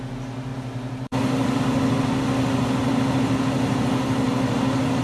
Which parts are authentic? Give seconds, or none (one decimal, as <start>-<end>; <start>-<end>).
0.0-0.5; 1.6-2.8; 4.5-5.0